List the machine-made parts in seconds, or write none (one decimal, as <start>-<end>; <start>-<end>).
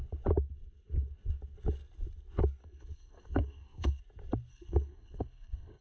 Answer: 2.6-4.0; 4.5-5.8